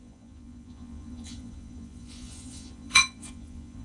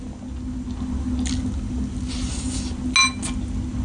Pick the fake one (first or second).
first